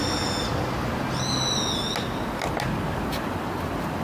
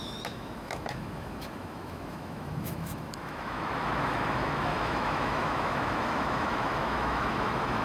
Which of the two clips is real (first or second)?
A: first